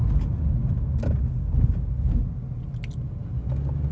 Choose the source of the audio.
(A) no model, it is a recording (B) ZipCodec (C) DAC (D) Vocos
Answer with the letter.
A